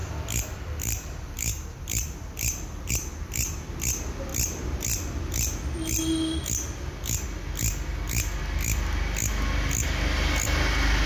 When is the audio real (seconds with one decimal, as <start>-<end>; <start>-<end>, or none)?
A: 2.9-11.1